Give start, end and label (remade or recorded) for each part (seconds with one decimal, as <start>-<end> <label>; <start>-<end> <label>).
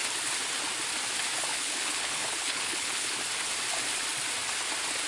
0.0-1.5 recorded; 1.5-3.1 remade; 3.1-5.1 recorded